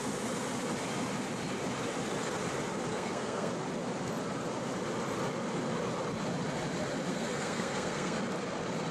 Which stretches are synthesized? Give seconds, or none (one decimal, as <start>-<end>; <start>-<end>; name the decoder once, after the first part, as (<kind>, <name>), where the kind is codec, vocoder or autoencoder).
2.9-3.5 (codec, SNAC); 7.1-8.2